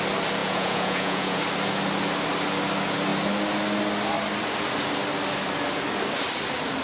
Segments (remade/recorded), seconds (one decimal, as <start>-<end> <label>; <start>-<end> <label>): 0.0-0.4 recorded; 0.4-1.4 remade; 1.4-6.8 recorded